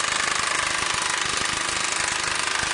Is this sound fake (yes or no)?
no